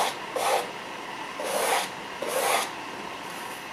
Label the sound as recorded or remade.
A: recorded